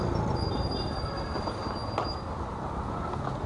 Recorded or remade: recorded